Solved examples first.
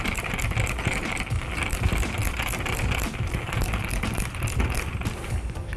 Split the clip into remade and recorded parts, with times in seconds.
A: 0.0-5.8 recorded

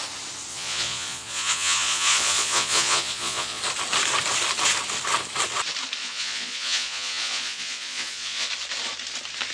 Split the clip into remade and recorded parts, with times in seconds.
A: 0.0-0.5 recorded; 0.5-3.6 remade; 3.6-6.0 recorded; 6.0-8.5 remade; 8.5-9.5 recorded

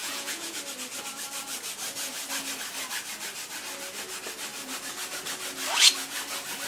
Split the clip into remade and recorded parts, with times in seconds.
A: 0.0-0.6 remade; 0.6-6.7 recorded